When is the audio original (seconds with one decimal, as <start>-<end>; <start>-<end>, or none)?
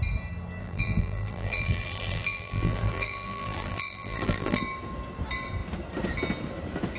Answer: 0.0-0.6; 4.6-7.0